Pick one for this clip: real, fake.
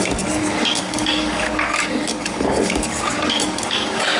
fake